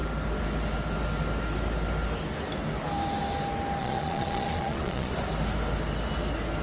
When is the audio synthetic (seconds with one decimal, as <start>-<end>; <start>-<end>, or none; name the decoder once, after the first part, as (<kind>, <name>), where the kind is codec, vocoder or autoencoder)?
3.8-5.1 (vocoder, Vocos)